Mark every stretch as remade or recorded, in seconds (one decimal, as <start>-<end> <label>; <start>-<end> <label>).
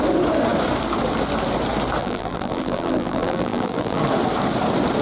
0.0-2.0 recorded; 2.0-4.0 remade; 4.0-5.0 recorded